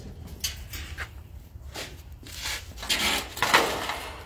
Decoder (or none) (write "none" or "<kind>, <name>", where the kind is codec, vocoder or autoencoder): none